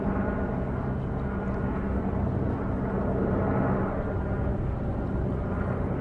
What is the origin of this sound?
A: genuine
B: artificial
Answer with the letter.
A